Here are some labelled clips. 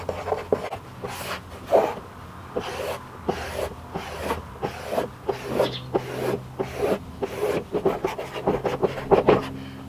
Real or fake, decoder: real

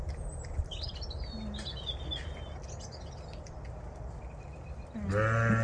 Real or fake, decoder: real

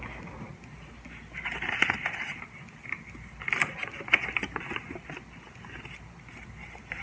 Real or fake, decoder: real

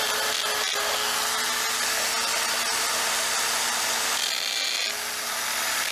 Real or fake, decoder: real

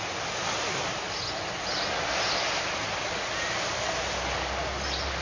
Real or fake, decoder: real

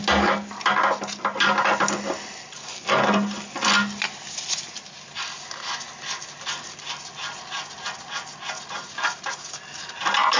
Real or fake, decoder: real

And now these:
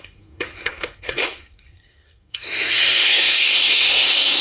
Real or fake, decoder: fake, codec, SNAC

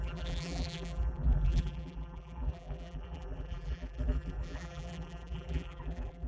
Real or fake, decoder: fake, vocoder, BigVGAN v2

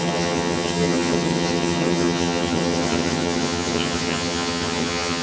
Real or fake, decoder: fake, vocoder, HiFi-GAN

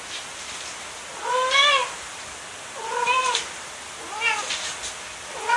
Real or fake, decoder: real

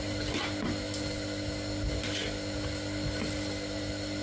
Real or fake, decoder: real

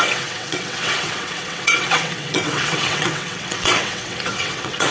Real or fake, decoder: fake, vocoder, WaveNeXt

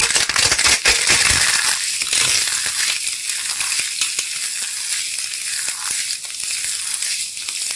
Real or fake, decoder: real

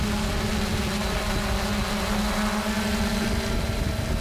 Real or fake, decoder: real